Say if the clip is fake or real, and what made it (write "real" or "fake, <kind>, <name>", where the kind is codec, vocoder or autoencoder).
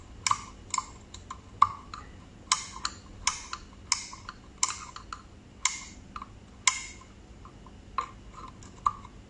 real